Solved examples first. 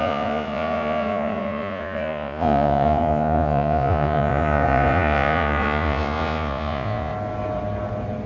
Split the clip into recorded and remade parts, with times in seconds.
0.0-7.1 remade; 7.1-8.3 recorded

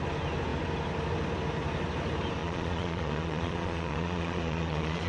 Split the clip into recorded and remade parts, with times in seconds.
0.0-2.4 recorded; 2.4-5.1 remade

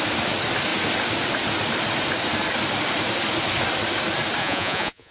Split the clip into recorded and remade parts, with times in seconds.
0.0-4.4 recorded; 4.4-5.1 remade

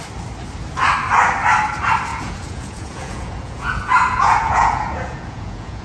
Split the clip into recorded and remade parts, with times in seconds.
0.0-2.1 recorded; 2.1-5.8 remade

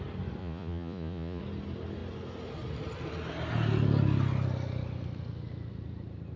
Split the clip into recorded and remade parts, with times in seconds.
0.0-0.4 recorded; 0.4-1.4 remade; 1.4-6.4 recorded

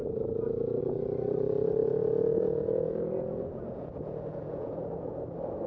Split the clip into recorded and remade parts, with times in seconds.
0.0-0.8 remade; 0.8-1.8 recorded; 1.8-5.2 remade; 5.2-5.7 recorded

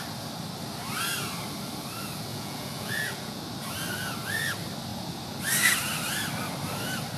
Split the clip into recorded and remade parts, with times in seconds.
0.0-2.3 recorded; 2.3-3.4 remade; 3.4-7.2 recorded